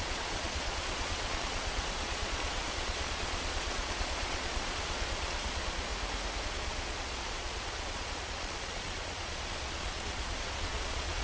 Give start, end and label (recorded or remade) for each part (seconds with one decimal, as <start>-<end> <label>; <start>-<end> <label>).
0.0-5.9 remade; 5.9-6.4 recorded; 6.4-11.2 remade